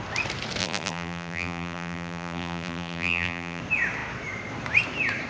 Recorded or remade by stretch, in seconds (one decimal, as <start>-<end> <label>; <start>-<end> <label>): 0.0-0.6 recorded; 0.6-3.6 remade; 3.6-5.3 recorded